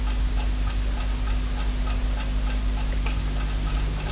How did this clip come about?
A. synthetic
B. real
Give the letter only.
B